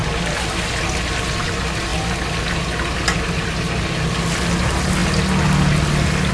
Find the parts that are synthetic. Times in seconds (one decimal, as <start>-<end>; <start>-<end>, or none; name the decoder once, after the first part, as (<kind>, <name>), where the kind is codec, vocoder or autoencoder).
none